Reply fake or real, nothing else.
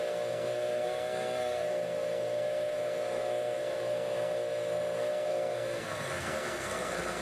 fake